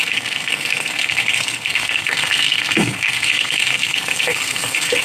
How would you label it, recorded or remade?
remade